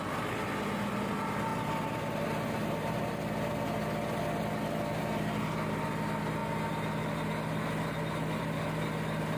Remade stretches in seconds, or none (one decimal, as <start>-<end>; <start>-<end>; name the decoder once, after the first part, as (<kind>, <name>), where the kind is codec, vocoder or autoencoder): none

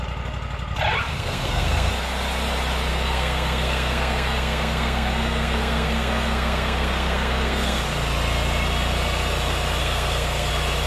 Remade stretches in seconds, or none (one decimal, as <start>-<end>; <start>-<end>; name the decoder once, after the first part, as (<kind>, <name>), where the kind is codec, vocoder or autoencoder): 1.1-1.9 (codec, SNAC); 2.9-7.8; 9.8-10.5

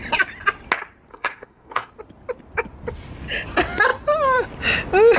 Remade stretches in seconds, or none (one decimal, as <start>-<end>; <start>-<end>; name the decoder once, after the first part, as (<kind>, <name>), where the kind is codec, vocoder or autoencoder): 1.1-1.9 (codec, SNAC)

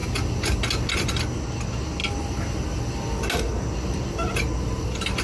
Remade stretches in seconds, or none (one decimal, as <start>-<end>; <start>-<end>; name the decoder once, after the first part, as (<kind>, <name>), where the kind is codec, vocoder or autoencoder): none

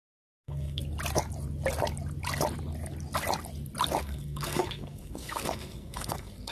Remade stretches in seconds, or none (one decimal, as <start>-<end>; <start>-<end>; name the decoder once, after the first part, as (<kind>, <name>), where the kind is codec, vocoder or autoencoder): 0.0-0.8 (codec, SNAC); 4.0-6.5